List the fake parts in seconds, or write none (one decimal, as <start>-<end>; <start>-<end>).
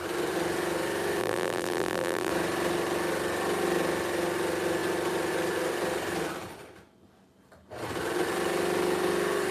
1.2-2.3